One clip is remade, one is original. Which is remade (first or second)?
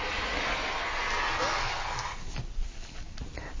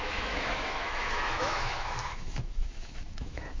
second